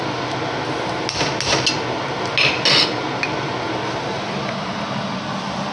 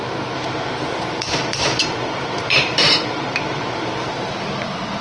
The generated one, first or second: second